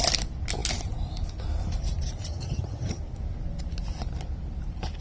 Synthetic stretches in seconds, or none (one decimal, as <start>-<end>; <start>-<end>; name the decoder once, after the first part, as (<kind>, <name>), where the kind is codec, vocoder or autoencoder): 2.3-3.0 (vocoder, HiFi-GAN)

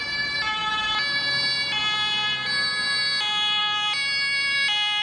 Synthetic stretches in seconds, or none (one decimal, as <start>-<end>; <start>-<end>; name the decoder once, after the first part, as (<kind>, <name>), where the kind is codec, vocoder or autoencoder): none

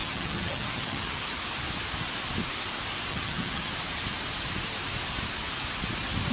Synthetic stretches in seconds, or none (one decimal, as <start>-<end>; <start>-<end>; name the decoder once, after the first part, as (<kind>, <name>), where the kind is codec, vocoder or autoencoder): 0.0-1.2 (vocoder, HiFi-GAN); 3.1-3.7

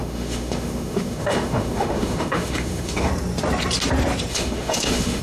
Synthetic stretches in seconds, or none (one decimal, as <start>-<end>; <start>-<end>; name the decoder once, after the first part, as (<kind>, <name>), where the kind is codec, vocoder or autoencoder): 0.0-3.1 (autoencoder, DAC-VAE); 4.3-5.2

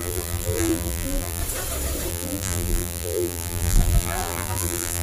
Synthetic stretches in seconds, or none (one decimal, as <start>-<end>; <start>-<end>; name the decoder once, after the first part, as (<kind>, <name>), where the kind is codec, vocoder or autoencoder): 0.0-1.4 (vocoder, BigVGAN v2); 2.1-5.0